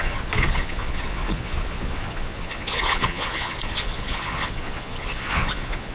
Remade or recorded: remade